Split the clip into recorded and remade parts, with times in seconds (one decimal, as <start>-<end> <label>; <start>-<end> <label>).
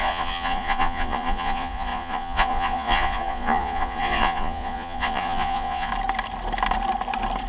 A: 0.0-5.9 remade; 5.9-7.5 recorded